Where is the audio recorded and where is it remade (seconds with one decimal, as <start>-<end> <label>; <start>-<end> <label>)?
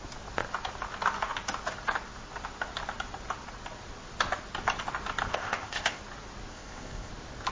0.0-5.3 recorded; 5.3-6.0 remade; 6.0-6.5 recorded; 6.5-7.1 remade; 7.1-7.5 recorded